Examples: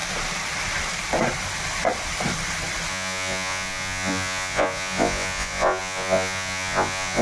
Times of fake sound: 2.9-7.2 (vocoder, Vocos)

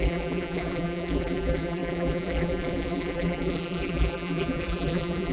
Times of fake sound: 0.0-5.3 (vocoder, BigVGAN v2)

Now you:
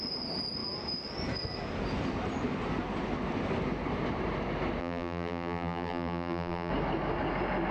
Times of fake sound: 4.8-6.7 (vocoder, BigVGAN v2)

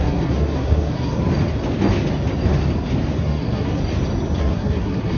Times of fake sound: 0.0-1.2 (codec, SNAC); 3.2-3.8; 4.4-5.2

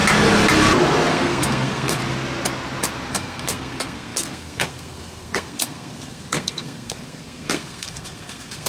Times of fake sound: 1.1-2.0 (codec, SNAC); 3.1-8.7

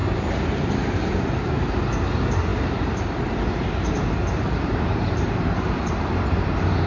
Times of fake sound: 0.0-6.9 (vocoder, BigVGAN v2)